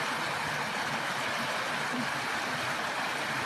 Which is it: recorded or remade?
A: recorded